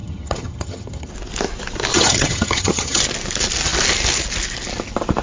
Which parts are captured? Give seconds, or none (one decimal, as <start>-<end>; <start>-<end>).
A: 1.1-1.9; 3.0-5.2